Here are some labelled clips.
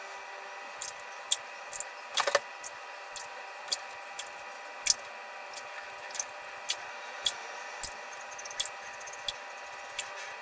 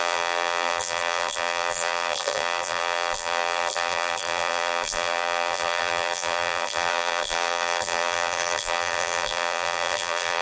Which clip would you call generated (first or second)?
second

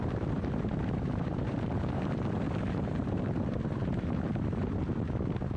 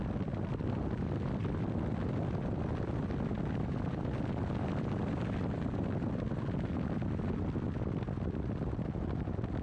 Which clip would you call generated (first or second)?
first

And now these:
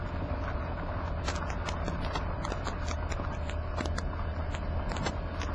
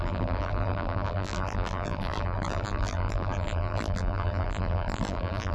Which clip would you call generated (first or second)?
second